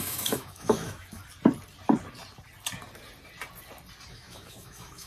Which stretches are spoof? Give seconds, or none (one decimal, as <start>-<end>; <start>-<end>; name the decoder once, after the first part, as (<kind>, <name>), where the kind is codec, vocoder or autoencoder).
0.0-1.2 (autoencoder, DAC-VAE); 4.1-5.1